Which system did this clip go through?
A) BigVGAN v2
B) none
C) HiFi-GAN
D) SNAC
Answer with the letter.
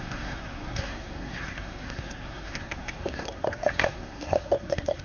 D